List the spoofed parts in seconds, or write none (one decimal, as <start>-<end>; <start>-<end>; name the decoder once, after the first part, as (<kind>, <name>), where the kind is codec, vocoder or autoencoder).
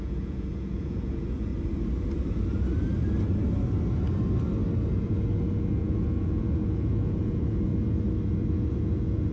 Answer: 0.0-1.5 (vocoder, Vocos); 4.9-7.7; 8.5-9.3